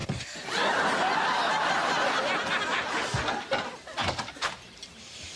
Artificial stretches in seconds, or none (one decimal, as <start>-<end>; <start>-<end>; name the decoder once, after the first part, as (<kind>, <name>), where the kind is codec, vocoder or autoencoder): 0.0-0.9 (vocoder, BigVGAN v2); 4.0-4.7